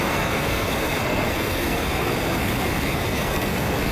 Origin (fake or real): fake